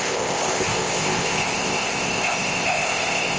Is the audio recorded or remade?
remade